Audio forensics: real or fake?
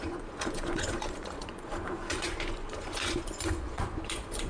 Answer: fake